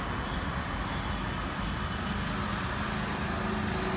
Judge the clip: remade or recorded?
recorded